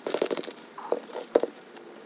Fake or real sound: fake